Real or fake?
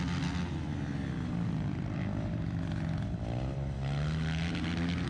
real